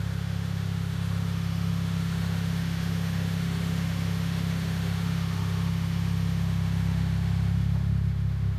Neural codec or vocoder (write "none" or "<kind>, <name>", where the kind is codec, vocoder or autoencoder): autoencoder, DAC-VAE